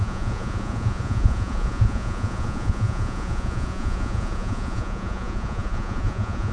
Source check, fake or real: fake